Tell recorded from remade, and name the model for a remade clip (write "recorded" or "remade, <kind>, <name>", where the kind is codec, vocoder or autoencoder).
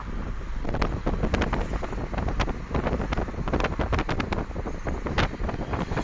recorded